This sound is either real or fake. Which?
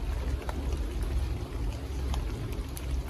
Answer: real